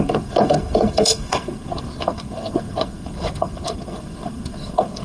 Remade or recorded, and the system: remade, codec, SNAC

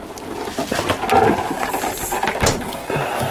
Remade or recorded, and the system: recorded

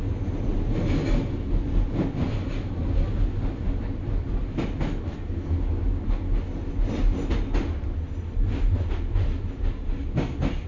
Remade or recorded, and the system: recorded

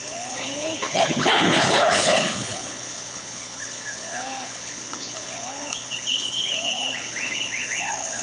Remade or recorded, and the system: remade, codec, HILCodec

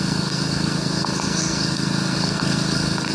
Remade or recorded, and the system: remade, codec, SNAC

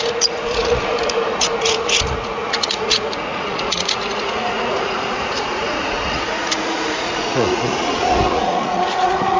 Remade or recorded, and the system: remade, vocoder, Vocos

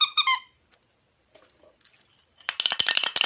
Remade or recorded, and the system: recorded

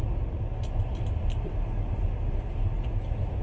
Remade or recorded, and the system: recorded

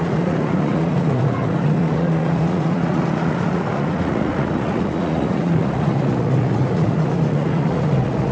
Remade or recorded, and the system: remade, vocoder, Vocos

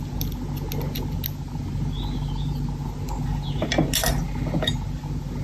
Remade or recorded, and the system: recorded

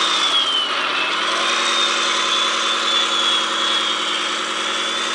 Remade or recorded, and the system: recorded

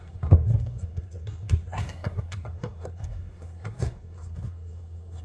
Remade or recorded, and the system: remade, codec, SNAC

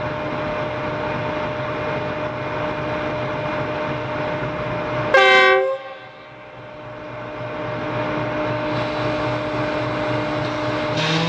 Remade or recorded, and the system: recorded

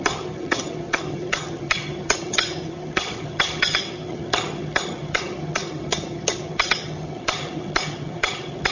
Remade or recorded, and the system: remade, vocoder, HiFi-GAN